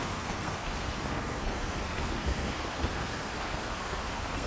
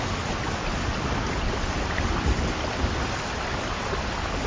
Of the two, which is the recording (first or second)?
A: second